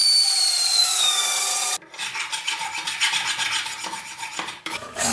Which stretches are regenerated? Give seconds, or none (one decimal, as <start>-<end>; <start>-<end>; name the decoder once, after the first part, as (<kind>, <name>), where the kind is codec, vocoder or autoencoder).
0.8-1.5 (codec, DAC); 4.6-5.1